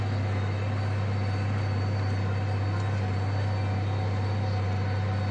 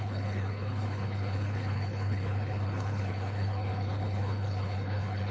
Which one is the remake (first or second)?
second